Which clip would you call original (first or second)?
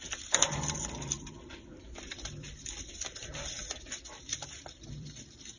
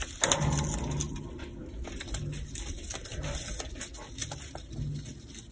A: second